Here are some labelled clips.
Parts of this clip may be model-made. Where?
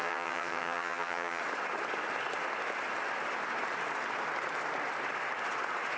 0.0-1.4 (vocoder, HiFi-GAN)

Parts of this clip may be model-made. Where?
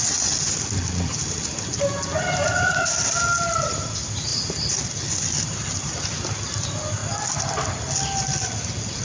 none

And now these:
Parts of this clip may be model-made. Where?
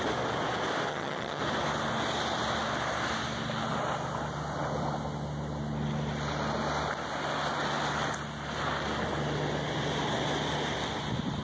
0.9-1.4 (vocoder, HiFi-GAN)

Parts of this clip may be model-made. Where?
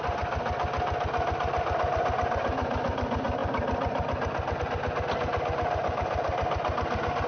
none